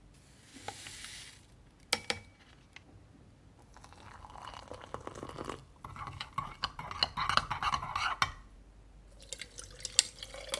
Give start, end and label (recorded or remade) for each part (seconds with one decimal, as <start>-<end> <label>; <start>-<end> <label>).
0.0-10.6 recorded

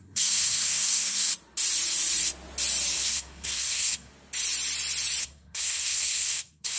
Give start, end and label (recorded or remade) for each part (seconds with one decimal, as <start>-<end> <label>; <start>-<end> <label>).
0.0-1.3 remade; 1.3-2.9 recorded; 2.9-4.1 remade; 4.1-5.2 recorded; 5.2-6.8 remade

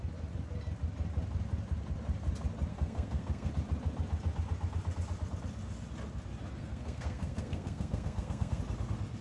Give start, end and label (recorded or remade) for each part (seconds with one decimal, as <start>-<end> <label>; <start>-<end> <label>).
0.0-2.7 recorded; 2.7-3.5 remade; 3.5-6.6 recorded; 6.6-8.6 remade; 8.6-9.2 recorded

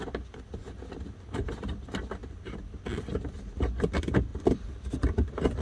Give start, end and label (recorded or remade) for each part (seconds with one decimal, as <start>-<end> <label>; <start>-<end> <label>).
0.0-2.2 recorded; 2.2-3.0 remade; 3.0-4.3 recorded; 4.3-5.6 remade

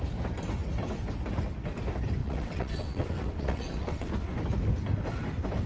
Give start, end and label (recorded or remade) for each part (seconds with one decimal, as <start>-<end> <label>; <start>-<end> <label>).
0.0-2.2 recorded; 2.2-4.1 remade; 4.1-5.7 recorded

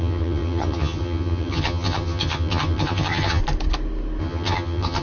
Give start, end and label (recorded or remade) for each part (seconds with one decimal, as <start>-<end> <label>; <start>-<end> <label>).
0.0-3.4 remade; 3.4-4.2 recorded; 4.2-5.0 remade

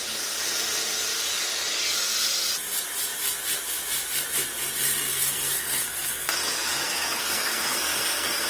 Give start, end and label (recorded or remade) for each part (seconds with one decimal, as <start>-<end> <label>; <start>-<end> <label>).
0.0-5.1 recorded; 5.1-8.5 remade

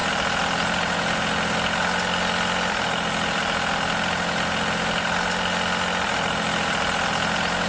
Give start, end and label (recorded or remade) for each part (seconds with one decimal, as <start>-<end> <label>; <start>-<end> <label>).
0.0-7.7 recorded